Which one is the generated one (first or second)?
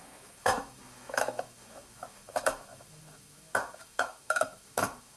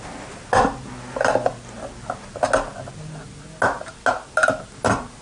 first